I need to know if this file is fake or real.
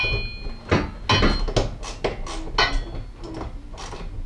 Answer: real